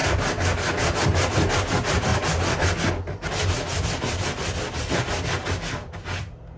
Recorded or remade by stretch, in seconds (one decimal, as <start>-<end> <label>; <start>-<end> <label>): 0.0-6.6 recorded

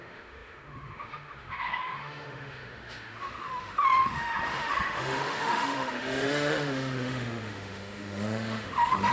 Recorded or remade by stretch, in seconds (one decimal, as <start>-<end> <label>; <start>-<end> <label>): 0.0-9.1 remade

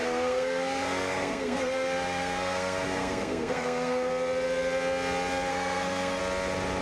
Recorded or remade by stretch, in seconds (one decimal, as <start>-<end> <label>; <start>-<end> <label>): 0.0-4.1 remade; 4.1-5.5 recorded; 5.5-6.2 remade; 6.2-6.8 recorded

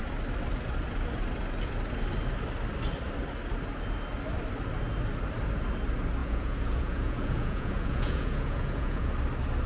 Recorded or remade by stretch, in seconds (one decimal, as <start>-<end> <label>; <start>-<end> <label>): 0.0-6.2 recorded; 6.2-9.1 remade; 9.1-9.7 recorded